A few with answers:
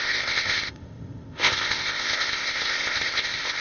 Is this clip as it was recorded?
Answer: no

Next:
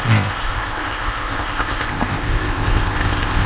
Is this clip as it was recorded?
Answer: no